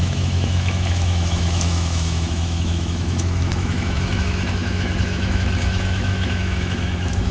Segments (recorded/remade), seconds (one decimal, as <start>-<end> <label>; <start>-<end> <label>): 0.0-7.3 remade